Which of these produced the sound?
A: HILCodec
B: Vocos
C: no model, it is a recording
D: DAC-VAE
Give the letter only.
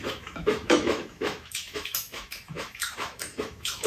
D